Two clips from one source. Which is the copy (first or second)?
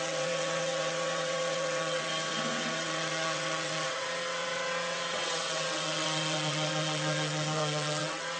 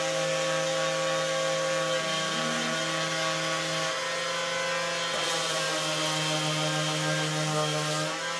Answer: first